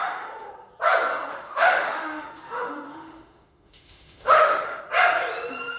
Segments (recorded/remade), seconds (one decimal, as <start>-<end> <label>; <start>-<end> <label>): 0.0-0.5 remade; 0.5-1.3 recorded; 1.3-4.8 remade; 4.8-5.8 recorded